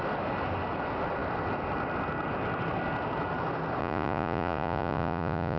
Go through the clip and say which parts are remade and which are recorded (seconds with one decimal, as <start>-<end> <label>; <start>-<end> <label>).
0.0-3.8 recorded; 3.8-5.6 remade